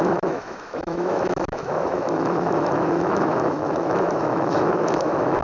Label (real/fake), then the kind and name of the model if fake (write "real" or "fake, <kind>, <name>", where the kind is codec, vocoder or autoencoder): fake, autoencoder, DAC-VAE